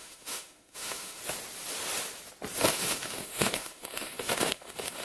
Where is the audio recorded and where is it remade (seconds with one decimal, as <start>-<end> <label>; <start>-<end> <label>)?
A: 0.0-1.2 remade; 1.2-2.7 recorded; 2.7-5.0 remade

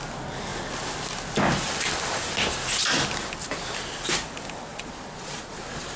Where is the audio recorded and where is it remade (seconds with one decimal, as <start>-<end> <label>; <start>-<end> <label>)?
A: 0.0-4.7 recorded; 4.7-5.6 remade; 5.6-6.0 recorded

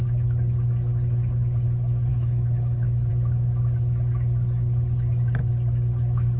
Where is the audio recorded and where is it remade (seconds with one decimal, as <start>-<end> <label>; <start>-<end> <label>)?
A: 0.0-2.1 recorded; 2.1-3.1 remade; 3.1-6.4 recorded